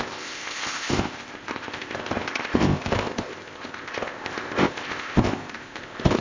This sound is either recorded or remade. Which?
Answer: remade